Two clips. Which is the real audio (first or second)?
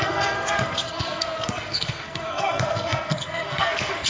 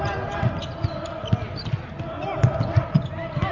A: second